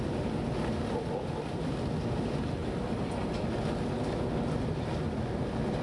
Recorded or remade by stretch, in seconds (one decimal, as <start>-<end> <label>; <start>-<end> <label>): 0.0-5.8 recorded

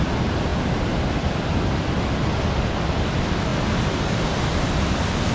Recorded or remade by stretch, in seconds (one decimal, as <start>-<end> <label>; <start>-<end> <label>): 0.0-5.3 recorded

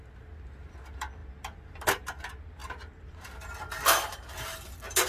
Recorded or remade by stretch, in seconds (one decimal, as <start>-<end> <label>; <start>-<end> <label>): 0.0-5.1 recorded

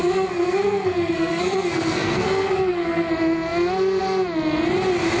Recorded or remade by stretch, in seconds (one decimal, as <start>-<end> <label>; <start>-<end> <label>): 0.0-3.1 remade; 3.1-5.2 recorded

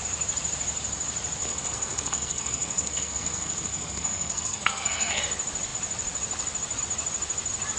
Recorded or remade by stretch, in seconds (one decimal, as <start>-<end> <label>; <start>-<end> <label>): 0.0-1.4 recorded; 1.4-5.2 remade; 5.2-7.8 recorded

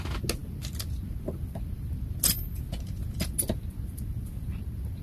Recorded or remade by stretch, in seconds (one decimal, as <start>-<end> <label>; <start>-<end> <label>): 0.0-5.0 recorded